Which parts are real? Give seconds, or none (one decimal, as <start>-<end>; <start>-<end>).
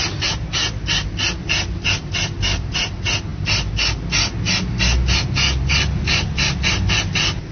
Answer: 0.0-7.5